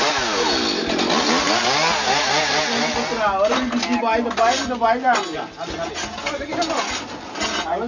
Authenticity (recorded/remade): recorded